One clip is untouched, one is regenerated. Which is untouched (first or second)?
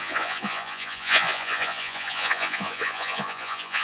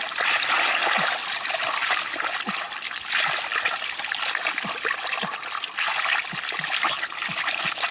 second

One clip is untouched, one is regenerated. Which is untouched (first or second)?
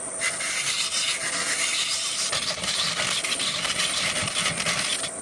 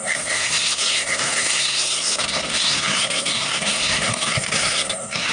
first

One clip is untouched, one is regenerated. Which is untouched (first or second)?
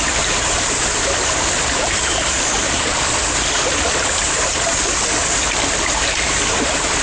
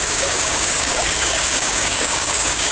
first